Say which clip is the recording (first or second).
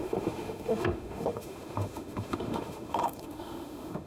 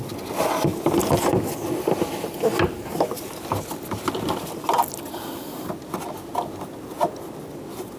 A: second